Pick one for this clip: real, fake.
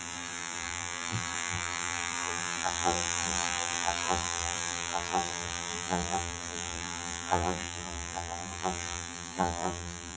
fake